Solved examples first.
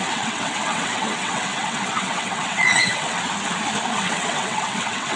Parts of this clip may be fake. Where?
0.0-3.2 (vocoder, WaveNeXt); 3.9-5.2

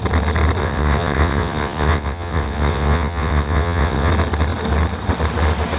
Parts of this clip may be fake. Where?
0.6-4.1 (vocoder, WaveNeXt)

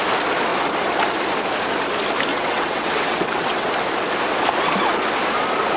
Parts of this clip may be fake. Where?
2.3-3.7 (vocoder, WaveNeXt)

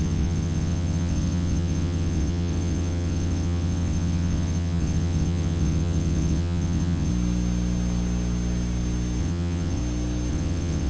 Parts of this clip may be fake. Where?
0.0-7.1 (vocoder, WaveNeXt); 9.2-9.8; 10.3-10.9

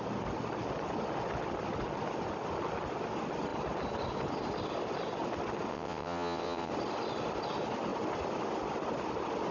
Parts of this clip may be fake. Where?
5.7-6.7 (vocoder, WaveNeXt)

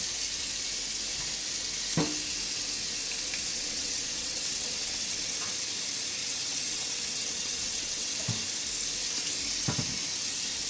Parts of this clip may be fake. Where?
3.5-5.4 (vocoder, WaveNeXt); 6.2-8.1

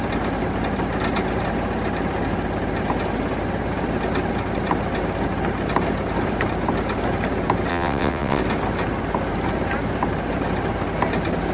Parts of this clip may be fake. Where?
7.7-8.4 (vocoder, WaveNeXt)